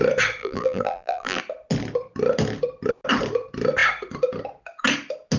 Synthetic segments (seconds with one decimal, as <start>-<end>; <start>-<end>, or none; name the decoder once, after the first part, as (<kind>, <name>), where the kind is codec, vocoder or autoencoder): 0.4-1.4 (vocoder, BigVGAN v2)